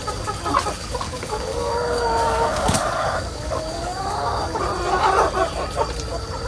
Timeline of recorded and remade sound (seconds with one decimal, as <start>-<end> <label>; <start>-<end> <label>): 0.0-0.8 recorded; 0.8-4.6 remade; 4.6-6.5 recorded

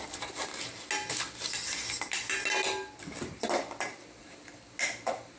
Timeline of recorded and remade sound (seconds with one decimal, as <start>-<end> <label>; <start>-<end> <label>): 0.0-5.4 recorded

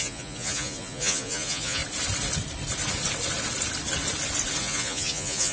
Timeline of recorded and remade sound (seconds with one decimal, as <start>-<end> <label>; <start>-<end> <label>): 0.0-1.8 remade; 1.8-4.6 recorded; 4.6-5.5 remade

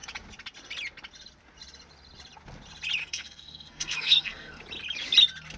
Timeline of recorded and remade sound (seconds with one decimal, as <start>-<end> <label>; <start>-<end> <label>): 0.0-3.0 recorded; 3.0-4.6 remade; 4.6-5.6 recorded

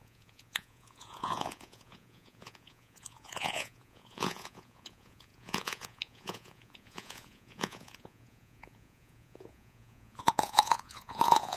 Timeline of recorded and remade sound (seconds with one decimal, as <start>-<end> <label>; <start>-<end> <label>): 0.0-11.6 remade

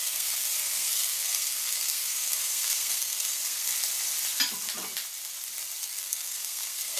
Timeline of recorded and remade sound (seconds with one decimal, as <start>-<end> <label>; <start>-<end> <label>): 0.0-3.7 remade; 3.7-5.8 recorded; 5.8-7.0 remade

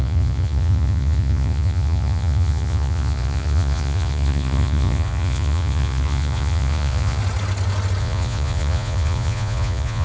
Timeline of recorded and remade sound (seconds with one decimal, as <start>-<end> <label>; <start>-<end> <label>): 0.0-7.2 remade; 7.2-8.0 recorded; 8.0-10.0 remade